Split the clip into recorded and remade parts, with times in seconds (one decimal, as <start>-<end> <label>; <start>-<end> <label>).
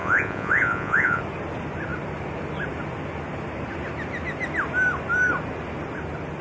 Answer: 0.0-1.2 remade; 1.2-6.4 recorded